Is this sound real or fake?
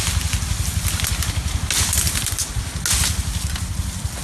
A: real